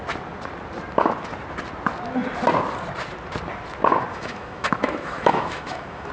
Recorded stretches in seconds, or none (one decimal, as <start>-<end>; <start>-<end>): 0.0-4.1